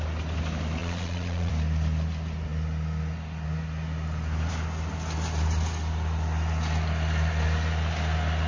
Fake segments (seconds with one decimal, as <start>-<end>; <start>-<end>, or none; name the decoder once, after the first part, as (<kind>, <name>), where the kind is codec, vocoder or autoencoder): 0.8-1.5 (vocoder, Vocos)